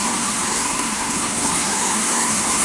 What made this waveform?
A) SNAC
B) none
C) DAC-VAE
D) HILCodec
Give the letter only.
A